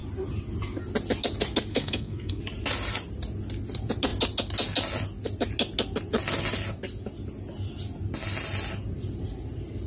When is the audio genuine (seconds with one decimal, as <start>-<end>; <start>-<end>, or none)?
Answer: 0.0-1.7; 2.4-9.9